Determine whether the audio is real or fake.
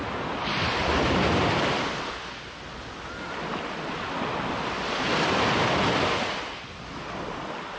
real